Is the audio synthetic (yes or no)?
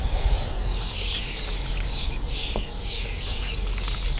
yes